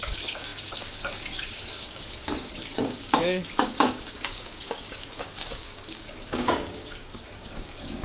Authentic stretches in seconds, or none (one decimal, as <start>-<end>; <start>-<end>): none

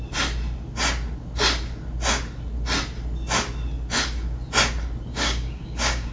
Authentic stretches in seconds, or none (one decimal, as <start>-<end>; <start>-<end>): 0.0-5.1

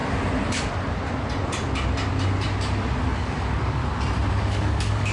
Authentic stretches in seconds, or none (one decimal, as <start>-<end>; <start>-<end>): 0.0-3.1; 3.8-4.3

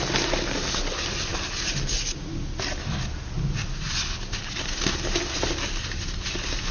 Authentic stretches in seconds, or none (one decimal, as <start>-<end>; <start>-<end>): 0.0-6.7